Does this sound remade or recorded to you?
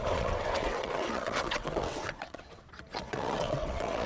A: remade